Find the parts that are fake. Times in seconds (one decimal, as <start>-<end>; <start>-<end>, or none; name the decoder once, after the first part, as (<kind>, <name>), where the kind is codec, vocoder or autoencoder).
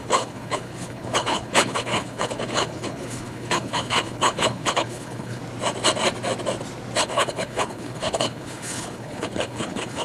0.0-5.4 (codec, HILCodec); 7.0-10.0